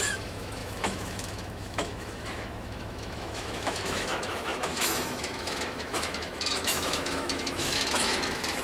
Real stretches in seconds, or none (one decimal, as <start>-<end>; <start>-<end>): none